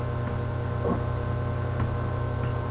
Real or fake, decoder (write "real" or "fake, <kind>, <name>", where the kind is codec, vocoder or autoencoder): real